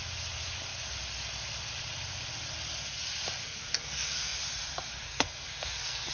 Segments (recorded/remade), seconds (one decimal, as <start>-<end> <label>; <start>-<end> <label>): 0.0-3.4 recorded; 3.4-4.4 remade; 4.4-5.1 recorded; 5.1-6.1 remade